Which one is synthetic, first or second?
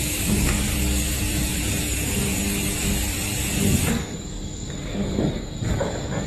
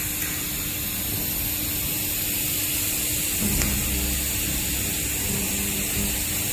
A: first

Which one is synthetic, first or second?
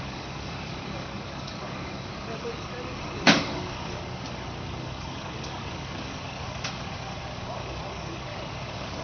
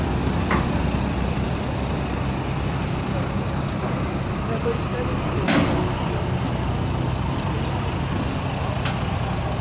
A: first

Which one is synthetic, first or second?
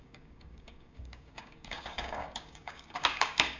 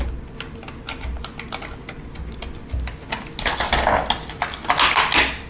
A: first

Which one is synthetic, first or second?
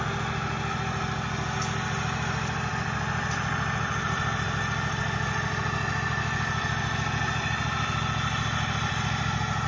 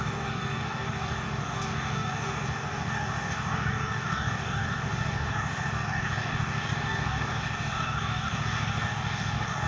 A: second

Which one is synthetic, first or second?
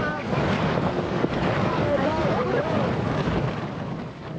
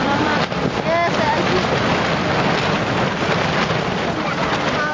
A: first